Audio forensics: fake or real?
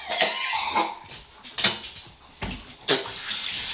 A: real